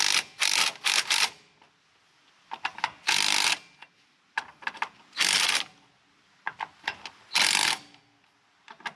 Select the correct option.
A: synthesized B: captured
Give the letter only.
B